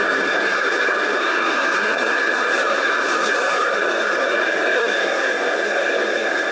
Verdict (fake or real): fake